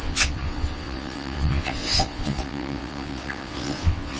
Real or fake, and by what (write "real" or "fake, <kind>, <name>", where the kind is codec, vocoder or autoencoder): fake, vocoder, WaveNeXt